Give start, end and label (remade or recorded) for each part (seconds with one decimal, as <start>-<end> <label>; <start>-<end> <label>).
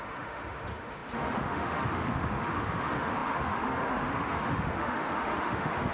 0.0-5.9 remade